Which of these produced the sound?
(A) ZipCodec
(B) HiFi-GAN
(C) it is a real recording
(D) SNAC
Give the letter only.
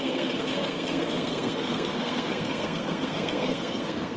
D